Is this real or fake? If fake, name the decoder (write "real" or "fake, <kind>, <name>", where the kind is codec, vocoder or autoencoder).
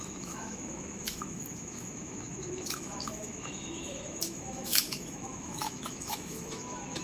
fake, autoencoder, DAC-VAE